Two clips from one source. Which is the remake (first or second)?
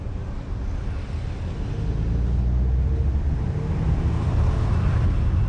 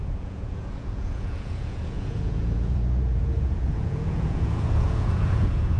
second